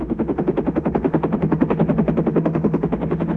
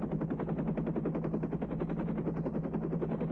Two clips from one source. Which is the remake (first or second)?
first